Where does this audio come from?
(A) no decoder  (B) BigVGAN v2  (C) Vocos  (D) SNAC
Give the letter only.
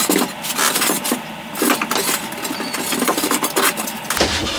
A